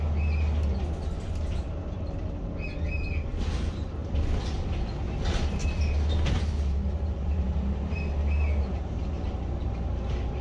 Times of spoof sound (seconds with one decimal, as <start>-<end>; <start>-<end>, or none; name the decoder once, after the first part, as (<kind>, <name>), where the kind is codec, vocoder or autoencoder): none